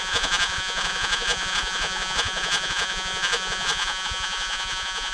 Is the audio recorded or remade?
remade